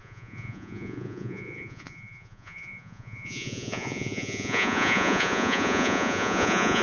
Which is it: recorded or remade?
remade